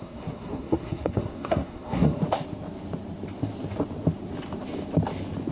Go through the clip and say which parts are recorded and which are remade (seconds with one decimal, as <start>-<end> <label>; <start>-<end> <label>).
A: 0.0-2.2 remade; 2.2-5.5 recorded